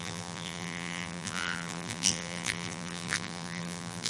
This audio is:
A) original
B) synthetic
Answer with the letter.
B